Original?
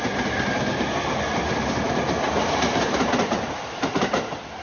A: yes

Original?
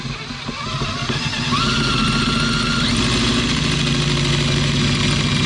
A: yes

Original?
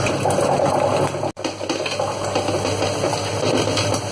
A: yes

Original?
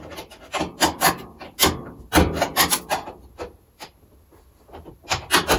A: yes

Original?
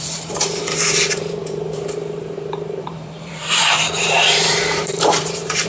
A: no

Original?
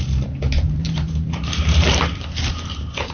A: no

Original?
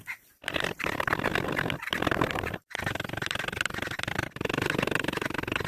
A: no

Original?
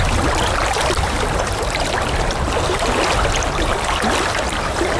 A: yes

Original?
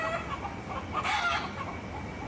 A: yes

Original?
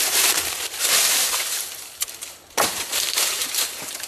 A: no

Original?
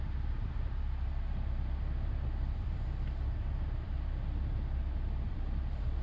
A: no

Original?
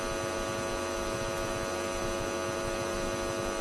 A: yes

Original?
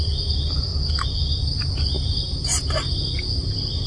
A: yes